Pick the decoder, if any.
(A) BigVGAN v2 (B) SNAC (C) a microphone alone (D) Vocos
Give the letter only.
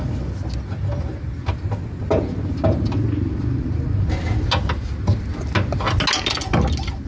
C